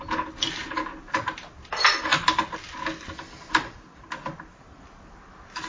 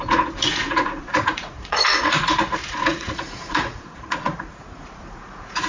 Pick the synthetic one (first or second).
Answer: second